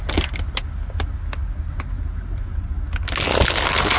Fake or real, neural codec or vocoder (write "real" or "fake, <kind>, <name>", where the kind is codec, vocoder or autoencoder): real